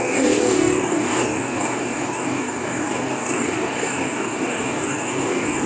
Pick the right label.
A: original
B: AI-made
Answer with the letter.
B